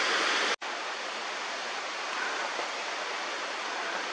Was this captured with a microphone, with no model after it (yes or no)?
yes